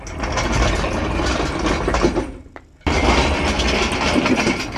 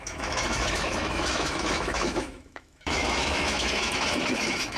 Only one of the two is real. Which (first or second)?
first